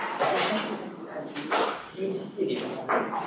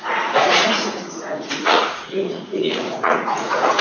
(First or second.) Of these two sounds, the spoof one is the second